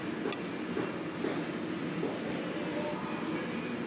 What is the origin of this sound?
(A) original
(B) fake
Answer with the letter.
A